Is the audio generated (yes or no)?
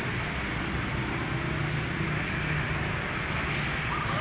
no